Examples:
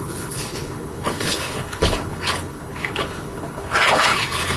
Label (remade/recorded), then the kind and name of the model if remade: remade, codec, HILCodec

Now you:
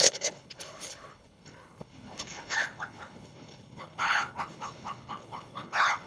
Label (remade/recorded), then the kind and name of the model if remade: remade, codec, HILCodec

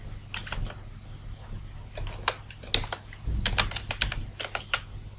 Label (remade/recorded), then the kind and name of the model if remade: recorded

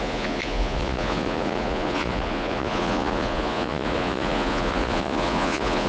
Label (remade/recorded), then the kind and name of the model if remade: remade, vocoder, Vocos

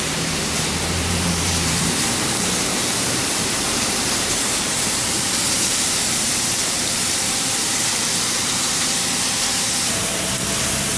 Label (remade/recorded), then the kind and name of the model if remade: remade, vocoder, BigVGAN v2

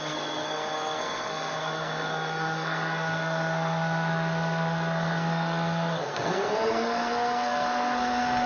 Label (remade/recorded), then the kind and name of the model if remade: remade, codec, SNAC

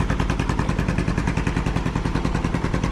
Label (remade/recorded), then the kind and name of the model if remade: recorded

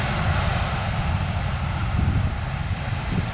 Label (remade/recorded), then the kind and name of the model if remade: recorded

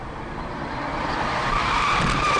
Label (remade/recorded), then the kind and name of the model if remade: remade, vocoder, BigVGAN v2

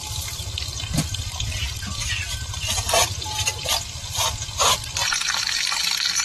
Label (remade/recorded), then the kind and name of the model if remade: recorded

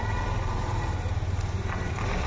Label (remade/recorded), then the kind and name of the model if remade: recorded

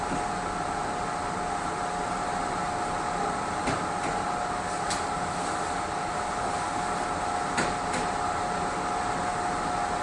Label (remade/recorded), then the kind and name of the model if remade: recorded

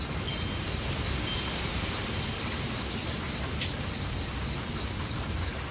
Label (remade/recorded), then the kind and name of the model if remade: recorded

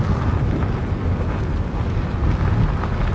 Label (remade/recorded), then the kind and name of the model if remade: recorded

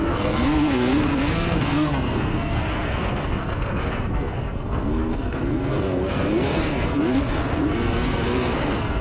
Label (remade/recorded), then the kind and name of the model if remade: remade, codec, SNAC